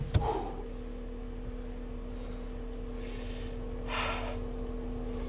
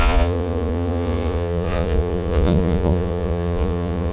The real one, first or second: first